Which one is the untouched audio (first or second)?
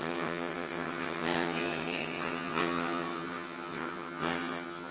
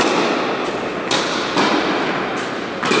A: second